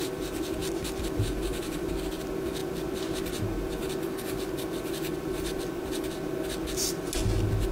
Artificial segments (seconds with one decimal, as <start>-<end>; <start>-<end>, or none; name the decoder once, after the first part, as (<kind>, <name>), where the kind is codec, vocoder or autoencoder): 0.6-1.9 (vocoder, BigVGAN v2); 2.6-5.6

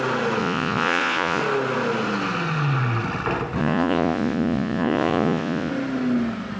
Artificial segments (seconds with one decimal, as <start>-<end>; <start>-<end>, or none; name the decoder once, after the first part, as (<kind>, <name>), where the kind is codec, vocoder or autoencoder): 0.4-1.4 (vocoder, Vocos); 3.6-5.7

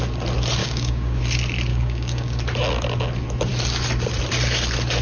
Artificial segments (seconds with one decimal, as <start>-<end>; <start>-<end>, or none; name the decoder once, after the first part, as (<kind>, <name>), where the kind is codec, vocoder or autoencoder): 0.6-1.2 (codec, DAC); 1.7-2.4

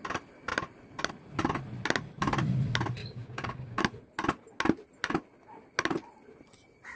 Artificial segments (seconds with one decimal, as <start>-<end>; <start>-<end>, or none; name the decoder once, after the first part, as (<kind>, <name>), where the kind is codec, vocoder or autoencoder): 3.0-3.8 (codec, DAC)